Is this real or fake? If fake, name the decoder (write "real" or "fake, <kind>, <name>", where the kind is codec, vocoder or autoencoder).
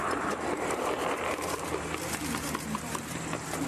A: fake, vocoder, BigVGAN v2